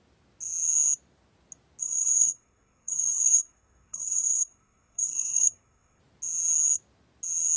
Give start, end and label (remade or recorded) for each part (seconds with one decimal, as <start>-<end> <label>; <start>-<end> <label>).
0.0-1.8 recorded; 1.8-6.0 remade; 6.0-7.6 recorded